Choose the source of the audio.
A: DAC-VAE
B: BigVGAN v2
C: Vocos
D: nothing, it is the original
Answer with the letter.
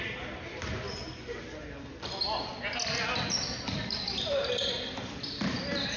D